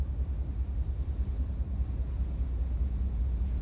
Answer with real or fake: real